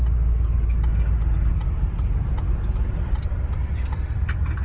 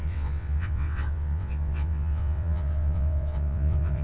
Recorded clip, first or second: first